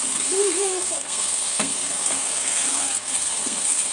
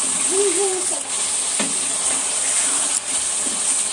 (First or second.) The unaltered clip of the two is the second